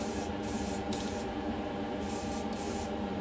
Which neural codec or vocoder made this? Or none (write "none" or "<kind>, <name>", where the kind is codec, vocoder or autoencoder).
vocoder, BigVGAN v2